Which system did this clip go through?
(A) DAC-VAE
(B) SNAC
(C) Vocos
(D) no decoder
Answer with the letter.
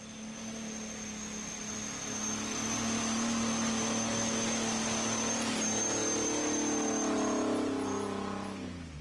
D